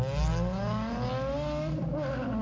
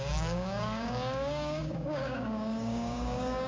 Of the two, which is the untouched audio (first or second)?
first